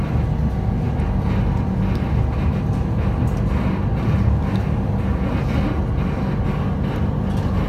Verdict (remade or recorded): recorded